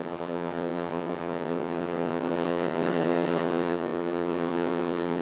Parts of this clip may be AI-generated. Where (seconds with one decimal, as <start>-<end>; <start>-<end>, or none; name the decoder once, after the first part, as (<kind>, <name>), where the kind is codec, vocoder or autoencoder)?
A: 0.0-5.2 (vocoder, HiFi-GAN)